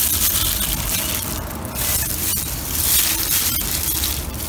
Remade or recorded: recorded